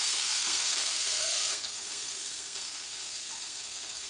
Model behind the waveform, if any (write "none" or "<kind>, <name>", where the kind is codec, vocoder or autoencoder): codec, SNAC